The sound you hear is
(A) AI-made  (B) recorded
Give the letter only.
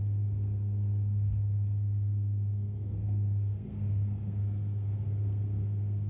A